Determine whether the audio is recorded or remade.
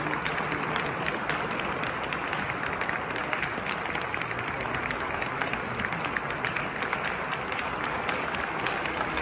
recorded